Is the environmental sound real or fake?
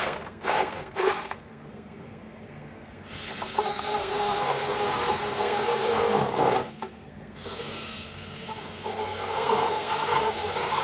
fake